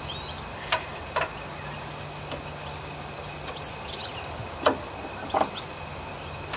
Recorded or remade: recorded